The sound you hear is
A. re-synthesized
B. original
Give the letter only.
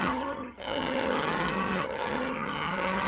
A